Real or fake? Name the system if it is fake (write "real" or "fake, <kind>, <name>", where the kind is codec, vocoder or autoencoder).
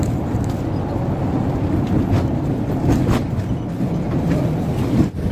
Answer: real